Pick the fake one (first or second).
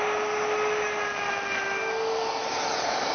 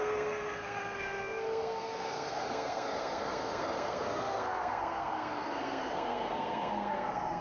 second